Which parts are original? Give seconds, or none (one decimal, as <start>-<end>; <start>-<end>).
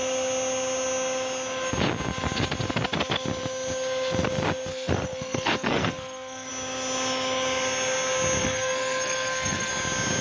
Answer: 0.0-4.7; 6.5-8.4; 9.7-10.2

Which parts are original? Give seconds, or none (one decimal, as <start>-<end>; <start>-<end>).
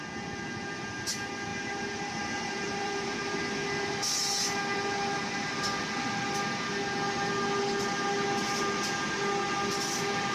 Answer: 0.0-1.5; 3.4-10.3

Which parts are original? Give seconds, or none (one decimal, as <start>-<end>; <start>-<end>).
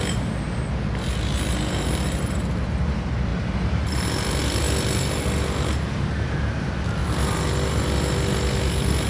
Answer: 0.0-9.1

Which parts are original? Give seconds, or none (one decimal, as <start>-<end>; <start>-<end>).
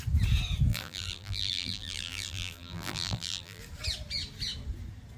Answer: 0.0-0.7; 3.6-5.2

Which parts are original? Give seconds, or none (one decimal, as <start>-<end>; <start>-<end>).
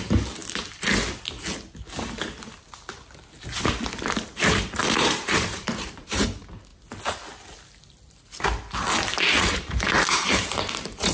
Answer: 0.4-4.8; 6.7-9.3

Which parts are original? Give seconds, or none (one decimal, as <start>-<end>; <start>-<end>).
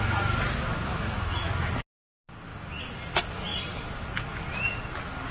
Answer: 0.0-0.9; 1.7-5.3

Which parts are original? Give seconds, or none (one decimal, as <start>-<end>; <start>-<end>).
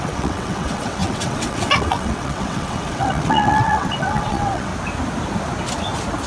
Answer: 4.7-6.3